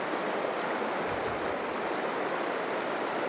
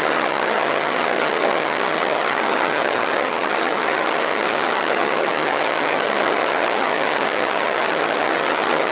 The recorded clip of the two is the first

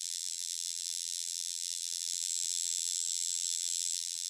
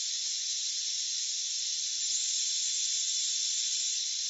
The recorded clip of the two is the second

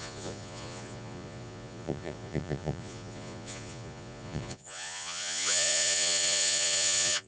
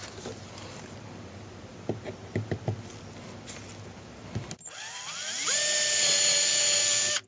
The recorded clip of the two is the second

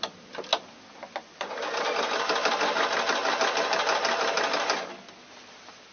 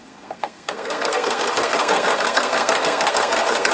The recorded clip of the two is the first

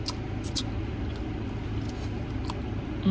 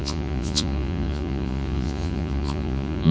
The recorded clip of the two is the first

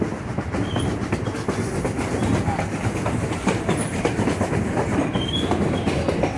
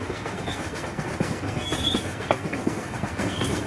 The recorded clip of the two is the first